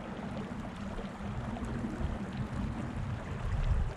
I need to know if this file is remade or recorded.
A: recorded